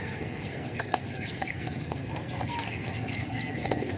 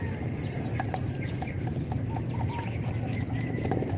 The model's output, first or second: first